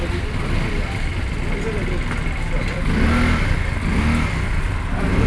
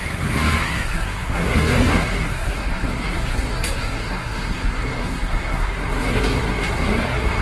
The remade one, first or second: second